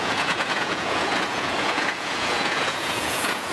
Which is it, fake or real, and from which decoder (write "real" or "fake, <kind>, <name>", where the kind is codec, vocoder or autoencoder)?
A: fake, vocoder, Vocos